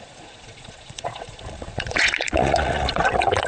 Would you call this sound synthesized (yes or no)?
yes